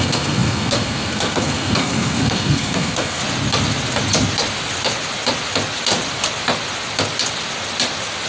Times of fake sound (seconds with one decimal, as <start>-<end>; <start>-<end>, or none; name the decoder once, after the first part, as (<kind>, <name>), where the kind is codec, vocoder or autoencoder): 0.0-3.2 (codec, SNAC)